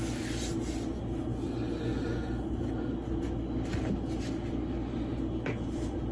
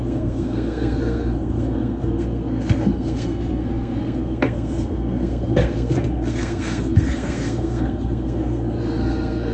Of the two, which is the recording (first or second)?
first